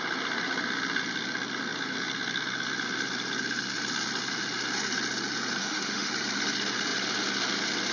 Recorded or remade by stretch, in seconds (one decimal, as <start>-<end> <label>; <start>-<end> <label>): 0.0-5.6 recorded; 5.6-6.1 remade; 6.1-7.9 recorded